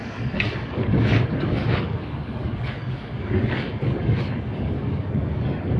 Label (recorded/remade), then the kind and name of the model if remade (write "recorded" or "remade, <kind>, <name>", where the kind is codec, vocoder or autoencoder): remade, codec, DAC